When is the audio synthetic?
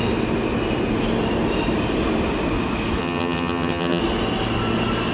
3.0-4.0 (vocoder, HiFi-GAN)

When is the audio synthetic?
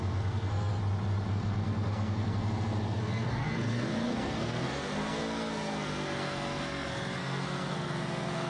0.0-0.7 (codec, SNAC); 1.3-8.5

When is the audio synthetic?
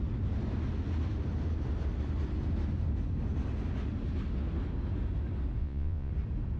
5.6-6.1 (vocoder, Vocos)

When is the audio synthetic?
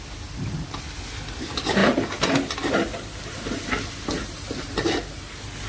none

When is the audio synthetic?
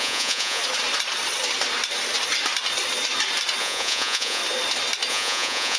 0.0-0.6 (vocoder, Vocos); 3.6-4.4; 5.1-5.8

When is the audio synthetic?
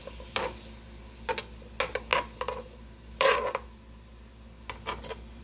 none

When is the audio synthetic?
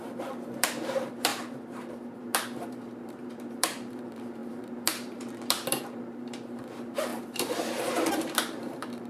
0.0-9.1 (vocoder, BigVGAN v2)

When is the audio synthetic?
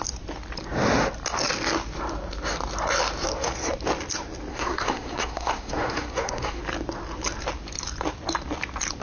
4.5-6.6 (codec, SNAC)